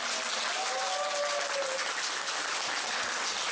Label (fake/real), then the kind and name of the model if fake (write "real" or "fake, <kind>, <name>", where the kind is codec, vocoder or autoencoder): real